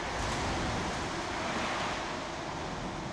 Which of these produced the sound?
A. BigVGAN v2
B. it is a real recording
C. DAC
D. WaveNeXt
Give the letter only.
B